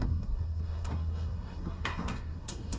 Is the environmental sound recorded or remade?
remade